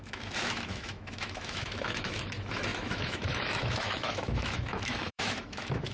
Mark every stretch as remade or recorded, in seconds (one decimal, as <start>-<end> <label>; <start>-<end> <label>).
0.0-5.9 remade